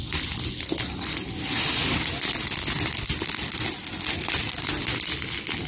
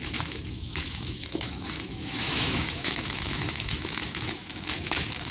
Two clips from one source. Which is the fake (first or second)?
second